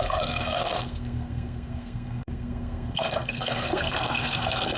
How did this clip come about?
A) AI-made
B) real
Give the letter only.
A